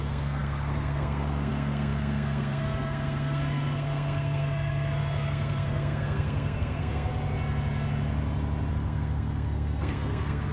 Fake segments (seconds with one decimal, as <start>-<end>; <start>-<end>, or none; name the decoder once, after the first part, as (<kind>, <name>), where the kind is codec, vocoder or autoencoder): 0.0-7.1 (codec, SNAC); 8.7-10.5